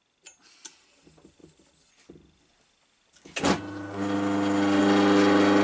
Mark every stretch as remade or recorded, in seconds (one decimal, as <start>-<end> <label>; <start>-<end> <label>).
0.0-5.6 recorded